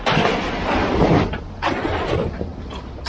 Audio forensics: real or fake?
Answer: real